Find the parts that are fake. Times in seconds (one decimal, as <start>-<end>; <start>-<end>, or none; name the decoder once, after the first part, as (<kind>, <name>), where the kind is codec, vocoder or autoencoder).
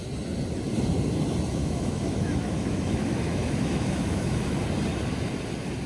1.6-4.6 (autoencoder, DAC-VAE)